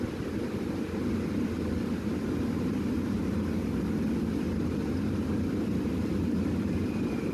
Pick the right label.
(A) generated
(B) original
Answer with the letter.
B